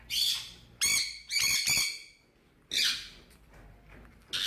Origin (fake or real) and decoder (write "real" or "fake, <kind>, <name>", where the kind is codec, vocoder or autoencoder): real